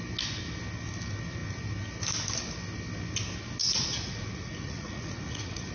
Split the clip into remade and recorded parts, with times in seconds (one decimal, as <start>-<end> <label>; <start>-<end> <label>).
0.0-3.6 recorded; 3.6-5.7 remade